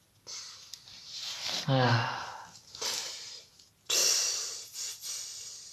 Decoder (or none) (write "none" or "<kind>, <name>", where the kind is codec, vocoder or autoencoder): none